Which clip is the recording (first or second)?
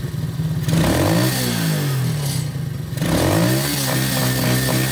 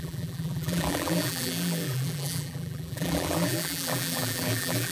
first